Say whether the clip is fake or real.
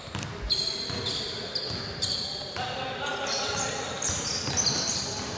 real